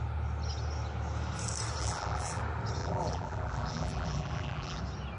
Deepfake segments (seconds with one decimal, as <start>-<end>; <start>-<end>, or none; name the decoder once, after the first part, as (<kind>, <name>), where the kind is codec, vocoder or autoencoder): 1.8-2.4 (vocoder, BigVGAN v2); 2.8-4.8